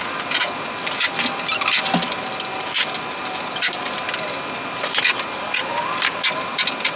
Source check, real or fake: real